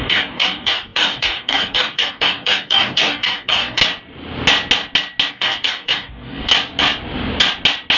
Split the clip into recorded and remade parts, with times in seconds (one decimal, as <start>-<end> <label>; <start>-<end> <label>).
0.0-3.8 remade; 3.8-5.3 recorded; 5.3-6.5 remade; 6.5-8.0 recorded